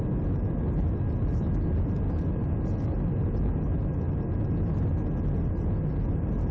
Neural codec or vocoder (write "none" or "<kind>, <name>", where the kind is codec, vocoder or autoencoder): none